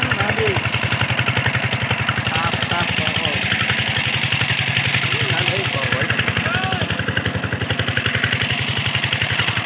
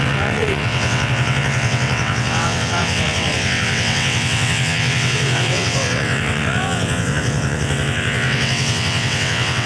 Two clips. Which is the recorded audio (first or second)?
first